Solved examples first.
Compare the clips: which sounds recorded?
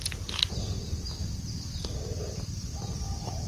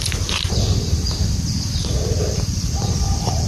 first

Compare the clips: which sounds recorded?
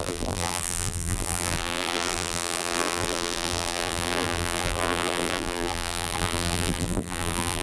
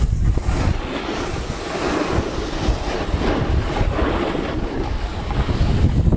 second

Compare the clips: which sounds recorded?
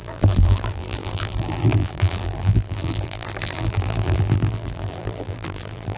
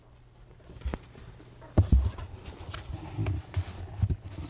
second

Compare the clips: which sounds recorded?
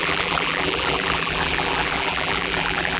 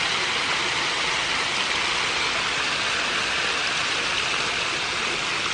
second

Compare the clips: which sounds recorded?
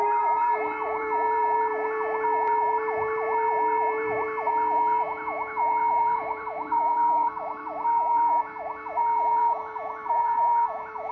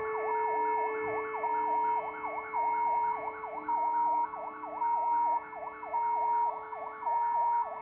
second